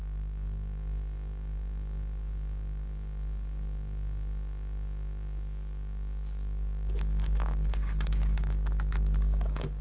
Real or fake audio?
fake